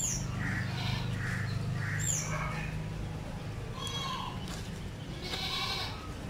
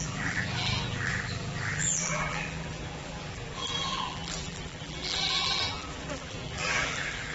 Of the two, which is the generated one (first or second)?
second